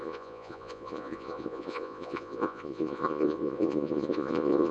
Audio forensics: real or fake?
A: fake